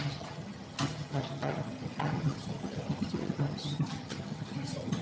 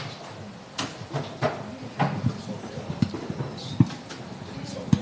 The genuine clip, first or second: second